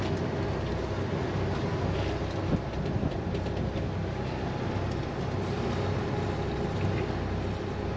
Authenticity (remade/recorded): recorded